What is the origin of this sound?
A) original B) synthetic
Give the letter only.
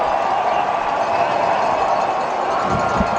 A